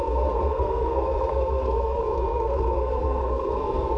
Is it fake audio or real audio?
fake